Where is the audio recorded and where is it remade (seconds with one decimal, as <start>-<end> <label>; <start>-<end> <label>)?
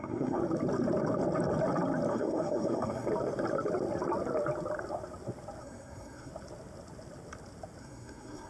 0.0-0.4 remade; 0.4-2.1 recorded; 2.1-3.1 remade; 3.1-5.6 recorded; 5.6-6.3 remade; 6.3-7.8 recorded; 7.8-8.5 remade